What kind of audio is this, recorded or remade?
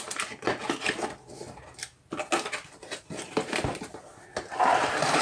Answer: recorded